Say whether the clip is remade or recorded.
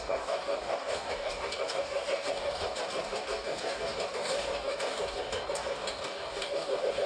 remade